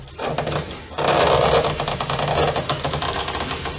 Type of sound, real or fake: real